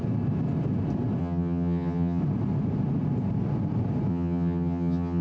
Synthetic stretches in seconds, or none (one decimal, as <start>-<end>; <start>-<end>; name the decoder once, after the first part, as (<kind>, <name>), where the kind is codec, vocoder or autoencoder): 1.2-2.2 (vocoder, HiFi-GAN); 4.1-5.2